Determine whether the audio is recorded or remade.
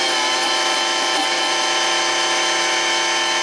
recorded